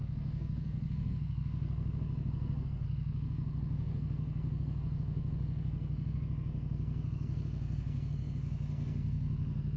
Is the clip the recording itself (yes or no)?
no